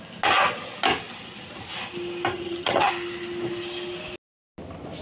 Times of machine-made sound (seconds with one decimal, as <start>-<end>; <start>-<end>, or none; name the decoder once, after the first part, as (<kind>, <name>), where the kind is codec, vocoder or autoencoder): 2.3-2.9 (vocoder, HiFi-GAN)